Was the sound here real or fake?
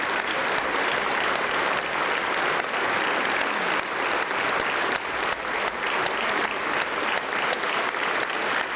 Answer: real